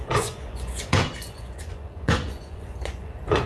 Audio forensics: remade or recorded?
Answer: remade